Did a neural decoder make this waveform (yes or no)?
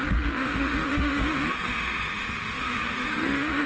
yes